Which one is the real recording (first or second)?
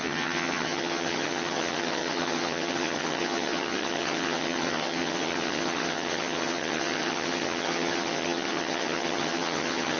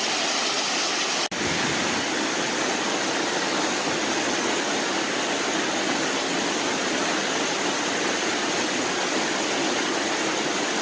second